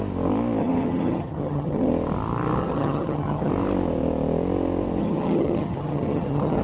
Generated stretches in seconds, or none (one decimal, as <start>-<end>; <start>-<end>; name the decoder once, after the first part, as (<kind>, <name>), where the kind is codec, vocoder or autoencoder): 0.6-1.9 (vocoder, HiFi-GAN); 2.6-3.5; 5.0-6.6